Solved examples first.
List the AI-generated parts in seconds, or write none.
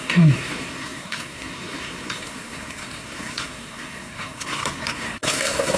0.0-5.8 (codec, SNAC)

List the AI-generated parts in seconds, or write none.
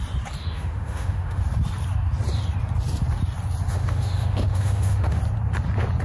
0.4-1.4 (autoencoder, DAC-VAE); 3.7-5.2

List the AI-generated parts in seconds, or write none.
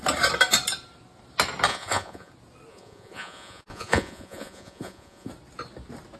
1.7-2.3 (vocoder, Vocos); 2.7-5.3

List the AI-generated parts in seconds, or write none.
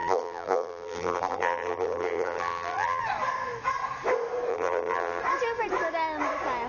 0.0-3.0 (vocoder, BigVGAN v2); 4.5-5.2